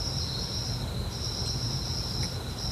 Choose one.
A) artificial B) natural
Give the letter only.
B